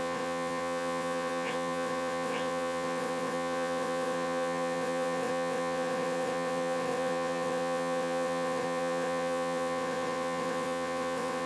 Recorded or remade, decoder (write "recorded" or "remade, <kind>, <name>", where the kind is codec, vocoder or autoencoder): remade, vocoder, WaveNeXt